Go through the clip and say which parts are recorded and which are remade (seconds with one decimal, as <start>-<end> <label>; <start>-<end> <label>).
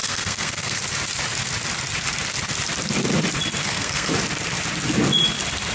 0.0-0.8 remade; 0.8-3.6 recorded; 3.6-4.1 remade; 4.1-5.7 recorded